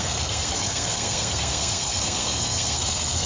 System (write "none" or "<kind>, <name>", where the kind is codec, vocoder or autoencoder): codec, SNAC